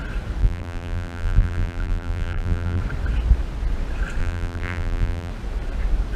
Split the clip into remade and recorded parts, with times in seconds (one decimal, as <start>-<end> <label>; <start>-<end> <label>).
0.0-0.4 recorded; 0.4-2.8 remade; 2.8-4.2 recorded; 4.2-5.3 remade; 5.3-6.2 recorded